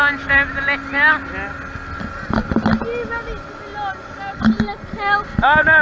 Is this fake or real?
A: real